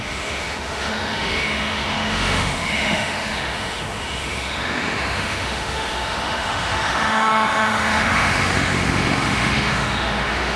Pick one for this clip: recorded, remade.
remade